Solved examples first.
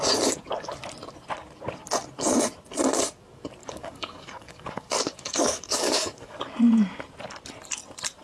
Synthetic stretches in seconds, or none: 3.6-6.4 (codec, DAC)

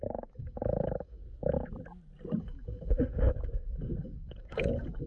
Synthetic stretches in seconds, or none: 0.0-1.2 (codec, DAC); 2.4-5.1

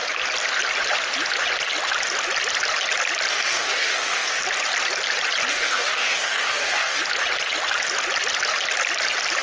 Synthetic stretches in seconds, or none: 3.3-4.4 (codec, DAC); 5.5-7.0

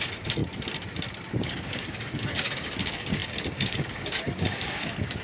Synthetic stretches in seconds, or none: 0.0-0.4 (codec, DAC); 1.3-5.2

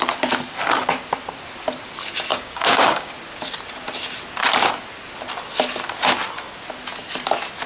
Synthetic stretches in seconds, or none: 2.3-3.1 (codec, DAC)